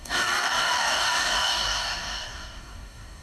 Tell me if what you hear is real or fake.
fake